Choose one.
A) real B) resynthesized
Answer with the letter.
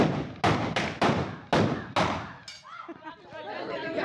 A